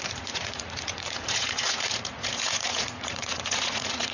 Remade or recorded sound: remade